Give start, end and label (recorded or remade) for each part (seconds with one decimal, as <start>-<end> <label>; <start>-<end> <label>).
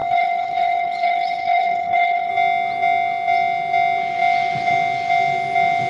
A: 0.0-2.3 remade; 2.3-5.9 recorded